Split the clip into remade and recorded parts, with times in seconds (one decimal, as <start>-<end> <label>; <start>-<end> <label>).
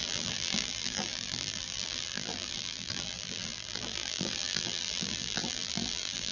0.0-6.3 remade